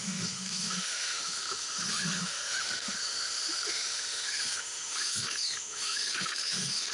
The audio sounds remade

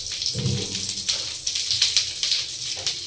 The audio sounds recorded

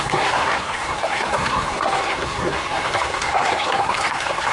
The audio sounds remade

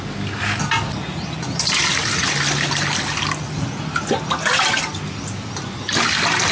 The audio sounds recorded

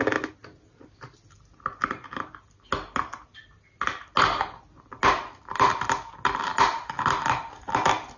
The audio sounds recorded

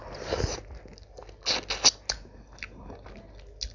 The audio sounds recorded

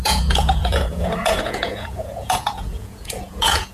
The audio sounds remade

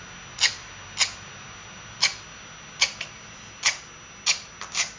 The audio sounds recorded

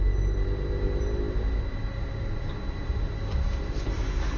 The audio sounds recorded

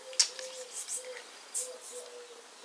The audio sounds recorded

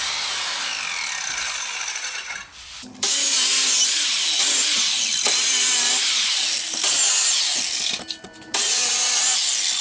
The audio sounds recorded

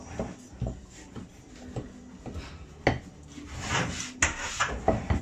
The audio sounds recorded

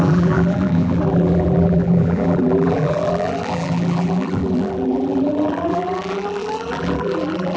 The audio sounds remade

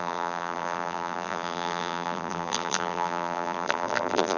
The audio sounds remade